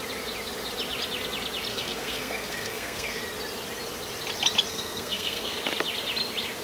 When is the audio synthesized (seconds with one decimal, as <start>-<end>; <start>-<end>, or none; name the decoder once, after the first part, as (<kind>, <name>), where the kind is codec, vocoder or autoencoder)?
1.7-3.2 (codec, SNAC); 4.7-5.6